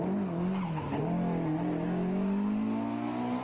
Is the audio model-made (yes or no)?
no